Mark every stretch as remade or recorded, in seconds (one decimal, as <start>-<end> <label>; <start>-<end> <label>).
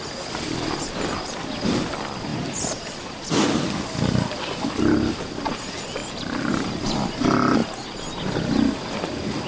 0.0-6.0 recorded; 6.0-7.1 remade; 7.1-9.5 recorded